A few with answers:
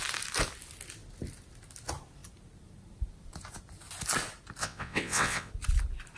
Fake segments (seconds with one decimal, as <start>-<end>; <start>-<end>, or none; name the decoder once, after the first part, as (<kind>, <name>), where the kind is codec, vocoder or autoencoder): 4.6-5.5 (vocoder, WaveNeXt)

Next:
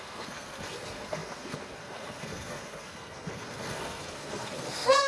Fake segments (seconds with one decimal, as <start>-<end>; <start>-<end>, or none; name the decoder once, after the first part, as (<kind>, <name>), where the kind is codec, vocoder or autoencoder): 0.0-5.1 (codec, SNAC)

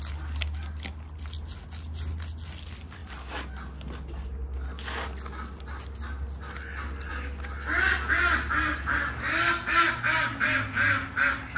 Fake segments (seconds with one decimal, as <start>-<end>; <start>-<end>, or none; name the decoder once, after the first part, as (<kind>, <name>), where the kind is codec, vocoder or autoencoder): none

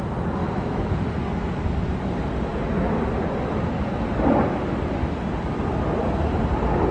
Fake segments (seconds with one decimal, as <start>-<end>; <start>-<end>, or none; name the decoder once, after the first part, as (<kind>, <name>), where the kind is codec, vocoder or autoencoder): 0.4-0.9 (autoencoder, DAC-VAE)